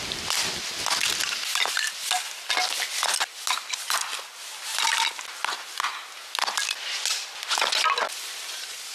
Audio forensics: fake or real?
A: real